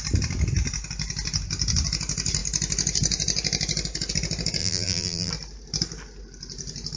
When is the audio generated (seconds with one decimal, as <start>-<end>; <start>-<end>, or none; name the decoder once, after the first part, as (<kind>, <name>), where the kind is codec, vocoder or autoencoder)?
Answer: 4.6-5.3 (vocoder, BigVGAN v2)